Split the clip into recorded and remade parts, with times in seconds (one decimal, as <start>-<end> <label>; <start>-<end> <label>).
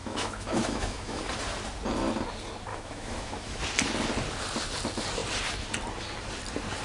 0.0-1.2 remade; 1.2-2.7 recorded; 2.7-3.6 remade; 3.6-6.8 recorded